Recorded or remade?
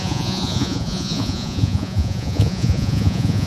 remade